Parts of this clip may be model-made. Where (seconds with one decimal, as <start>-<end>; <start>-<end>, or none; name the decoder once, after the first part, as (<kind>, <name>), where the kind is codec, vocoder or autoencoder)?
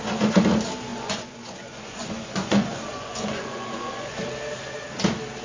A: 0.9-4.1 (vocoder, Vocos)